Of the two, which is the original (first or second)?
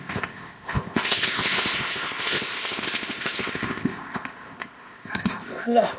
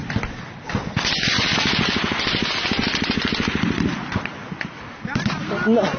second